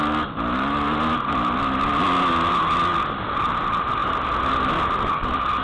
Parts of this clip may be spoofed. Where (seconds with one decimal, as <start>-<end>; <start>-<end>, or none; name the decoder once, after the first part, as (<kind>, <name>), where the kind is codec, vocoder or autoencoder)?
none